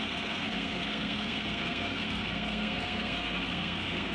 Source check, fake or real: fake